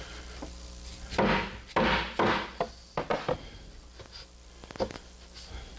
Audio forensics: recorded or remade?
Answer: recorded